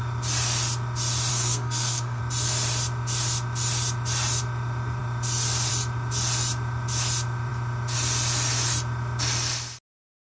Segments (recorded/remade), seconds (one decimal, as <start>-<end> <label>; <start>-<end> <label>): 0.0-1.3 recorded; 1.3-2.2 remade; 2.2-10.3 recorded